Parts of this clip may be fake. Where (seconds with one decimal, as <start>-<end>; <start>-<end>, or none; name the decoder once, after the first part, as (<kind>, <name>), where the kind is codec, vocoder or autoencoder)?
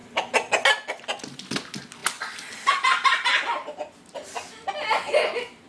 none